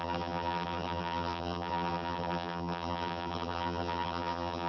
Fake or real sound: fake